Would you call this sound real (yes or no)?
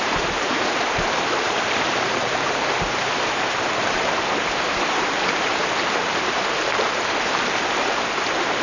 no